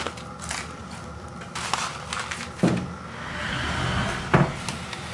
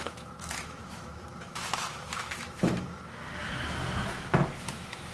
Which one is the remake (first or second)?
second